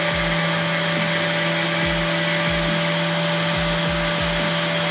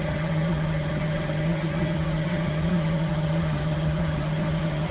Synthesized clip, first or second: second